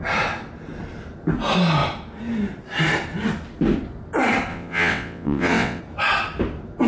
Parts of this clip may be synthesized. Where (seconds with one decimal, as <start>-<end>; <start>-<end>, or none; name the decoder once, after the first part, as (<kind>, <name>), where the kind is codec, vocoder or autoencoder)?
4.5-5.8 (vocoder, WaveNeXt)